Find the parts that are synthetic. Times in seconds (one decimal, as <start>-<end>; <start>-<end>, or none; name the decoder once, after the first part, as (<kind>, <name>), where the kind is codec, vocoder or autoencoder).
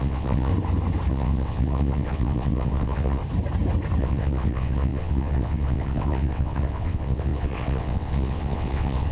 0.0-0.5 (vocoder, WaveNeXt); 1.1-3.2; 4.0-9.1